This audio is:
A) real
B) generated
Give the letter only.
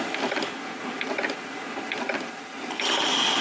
A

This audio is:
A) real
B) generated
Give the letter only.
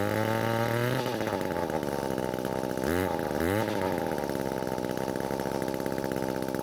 A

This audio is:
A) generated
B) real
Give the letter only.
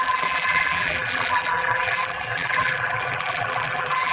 A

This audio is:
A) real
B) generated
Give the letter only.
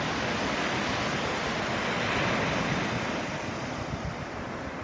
A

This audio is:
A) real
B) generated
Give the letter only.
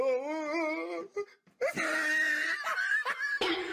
A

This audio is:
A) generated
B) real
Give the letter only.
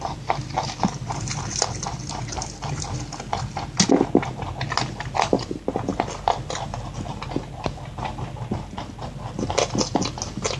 B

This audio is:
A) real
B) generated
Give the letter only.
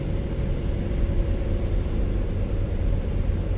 A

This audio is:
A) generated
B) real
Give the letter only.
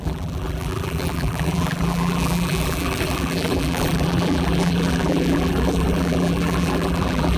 A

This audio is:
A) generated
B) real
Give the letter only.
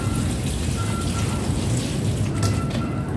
B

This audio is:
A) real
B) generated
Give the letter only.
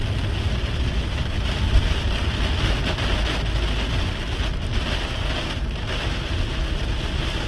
A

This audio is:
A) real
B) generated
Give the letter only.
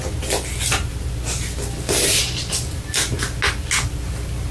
A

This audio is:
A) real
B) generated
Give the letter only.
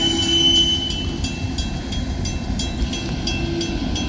A